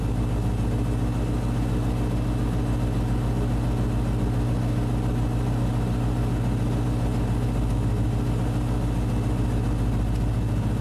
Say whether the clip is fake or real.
real